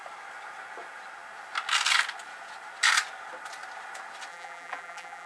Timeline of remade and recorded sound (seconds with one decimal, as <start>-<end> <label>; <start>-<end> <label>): 0.0-4.3 recorded; 4.3-5.3 remade